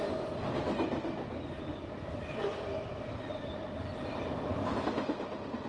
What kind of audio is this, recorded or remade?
recorded